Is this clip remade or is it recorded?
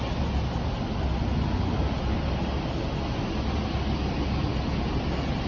recorded